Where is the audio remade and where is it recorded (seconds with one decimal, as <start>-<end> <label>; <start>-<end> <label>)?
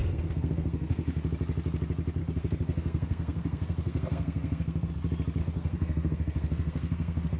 0.0-1.2 remade; 1.2-2.2 recorded; 2.2-4.9 remade; 4.9-5.4 recorded; 5.4-7.4 remade